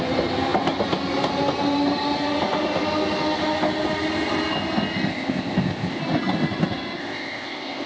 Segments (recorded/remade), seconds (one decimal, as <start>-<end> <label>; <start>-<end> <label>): 0.0-5.1 recorded; 5.1-6.0 remade; 6.0-7.0 recorded; 7.0-7.9 remade